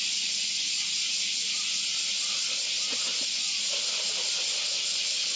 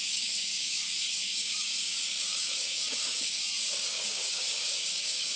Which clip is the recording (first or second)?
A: first